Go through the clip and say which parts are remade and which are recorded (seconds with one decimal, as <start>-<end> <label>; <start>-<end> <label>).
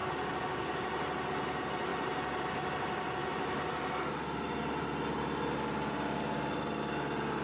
0.0-7.4 recorded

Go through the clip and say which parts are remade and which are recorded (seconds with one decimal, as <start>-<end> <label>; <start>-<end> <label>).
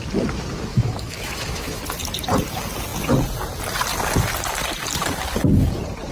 0.0-0.7 recorded; 0.7-1.8 remade; 1.8-6.1 recorded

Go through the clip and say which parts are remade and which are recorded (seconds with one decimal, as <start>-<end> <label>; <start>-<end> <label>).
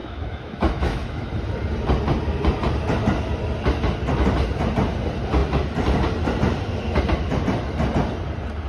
0.0-1.3 remade; 1.3-8.7 recorded